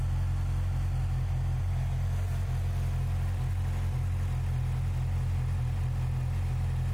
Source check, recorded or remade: recorded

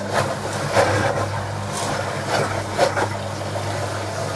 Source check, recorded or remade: recorded